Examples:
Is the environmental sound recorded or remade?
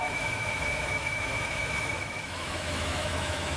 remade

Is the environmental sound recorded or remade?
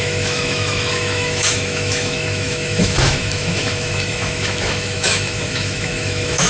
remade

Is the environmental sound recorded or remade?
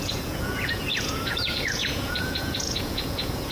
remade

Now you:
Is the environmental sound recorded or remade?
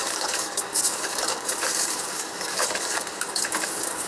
remade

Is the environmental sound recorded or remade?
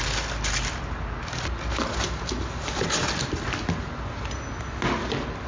recorded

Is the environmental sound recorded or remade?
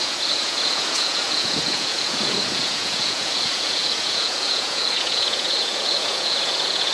remade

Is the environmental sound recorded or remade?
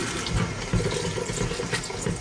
recorded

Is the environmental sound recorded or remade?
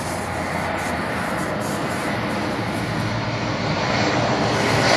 recorded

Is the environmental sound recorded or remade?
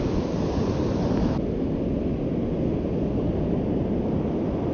recorded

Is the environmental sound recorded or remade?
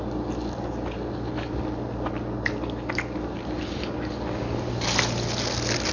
recorded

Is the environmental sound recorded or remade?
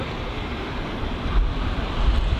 recorded